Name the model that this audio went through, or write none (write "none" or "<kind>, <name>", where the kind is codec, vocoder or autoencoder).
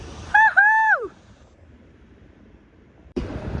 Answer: vocoder, BigVGAN v2